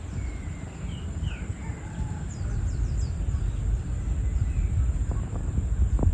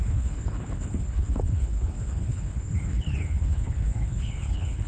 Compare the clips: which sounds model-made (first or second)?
second